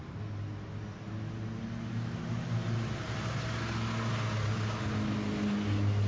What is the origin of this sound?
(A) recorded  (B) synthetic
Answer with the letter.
A